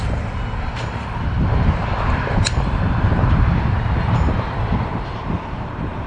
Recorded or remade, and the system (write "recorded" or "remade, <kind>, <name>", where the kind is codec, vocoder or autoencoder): remade, vocoder, BigVGAN v2